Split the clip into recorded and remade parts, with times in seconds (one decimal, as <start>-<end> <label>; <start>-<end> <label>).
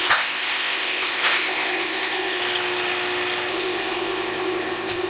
0.0-2.4 remade; 2.4-3.5 recorded; 3.5-5.1 remade